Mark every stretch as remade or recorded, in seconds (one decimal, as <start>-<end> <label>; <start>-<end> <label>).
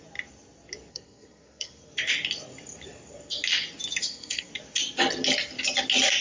0.0-0.9 recorded; 0.9-1.9 remade; 1.9-4.0 recorded; 4.0-4.5 remade; 4.5-6.2 recorded